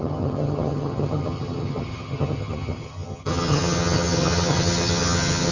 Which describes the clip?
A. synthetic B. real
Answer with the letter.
A